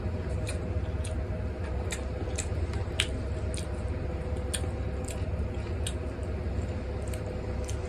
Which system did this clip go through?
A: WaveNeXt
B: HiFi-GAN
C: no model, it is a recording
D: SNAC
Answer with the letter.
C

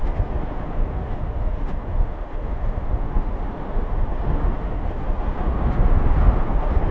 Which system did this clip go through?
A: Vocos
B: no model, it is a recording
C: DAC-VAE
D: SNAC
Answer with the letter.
C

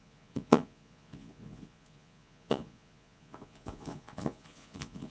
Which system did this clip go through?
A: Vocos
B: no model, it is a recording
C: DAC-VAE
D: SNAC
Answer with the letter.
A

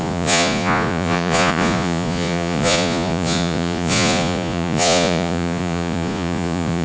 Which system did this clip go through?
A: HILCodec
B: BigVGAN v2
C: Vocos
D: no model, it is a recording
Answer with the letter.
C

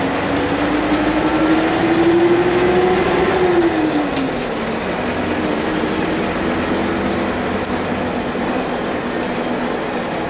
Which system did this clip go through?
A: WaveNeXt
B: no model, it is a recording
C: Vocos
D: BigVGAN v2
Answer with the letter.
B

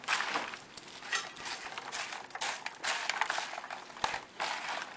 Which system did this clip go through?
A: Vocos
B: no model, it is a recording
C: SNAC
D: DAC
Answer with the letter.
B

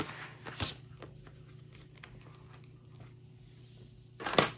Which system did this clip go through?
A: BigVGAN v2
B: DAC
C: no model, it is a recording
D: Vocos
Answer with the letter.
C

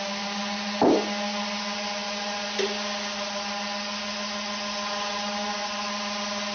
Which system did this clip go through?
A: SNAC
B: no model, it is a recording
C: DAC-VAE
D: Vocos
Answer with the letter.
B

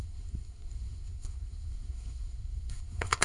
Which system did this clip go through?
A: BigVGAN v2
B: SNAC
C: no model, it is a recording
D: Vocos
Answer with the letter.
B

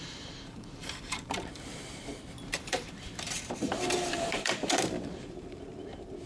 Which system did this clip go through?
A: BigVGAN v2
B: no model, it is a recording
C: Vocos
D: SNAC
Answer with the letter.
A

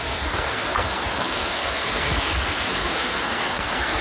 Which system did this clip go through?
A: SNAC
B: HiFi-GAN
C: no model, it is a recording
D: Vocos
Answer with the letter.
A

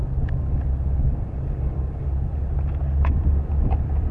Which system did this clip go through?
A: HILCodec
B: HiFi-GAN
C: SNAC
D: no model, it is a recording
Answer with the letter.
D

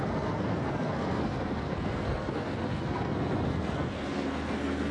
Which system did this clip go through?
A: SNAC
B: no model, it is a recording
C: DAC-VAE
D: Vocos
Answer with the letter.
A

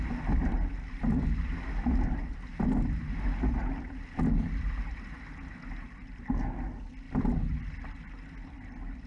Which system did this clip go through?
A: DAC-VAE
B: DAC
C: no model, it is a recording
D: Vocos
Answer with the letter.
C